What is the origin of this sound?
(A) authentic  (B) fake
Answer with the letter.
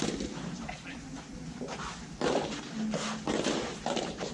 A